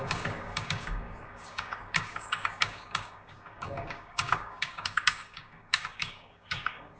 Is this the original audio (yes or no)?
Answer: no